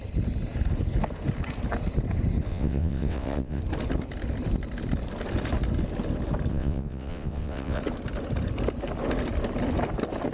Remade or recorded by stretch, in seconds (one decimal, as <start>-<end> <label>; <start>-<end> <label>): 0.0-2.5 recorded; 2.5-3.6 remade; 3.6-6.5 recorded; 6.5-7.8 remade; 7.8-10.3 recorded